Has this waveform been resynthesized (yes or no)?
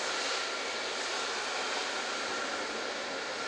no